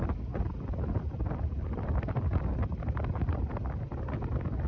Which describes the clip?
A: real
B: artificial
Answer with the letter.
A